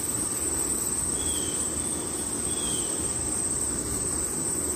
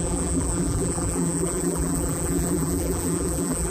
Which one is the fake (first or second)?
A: second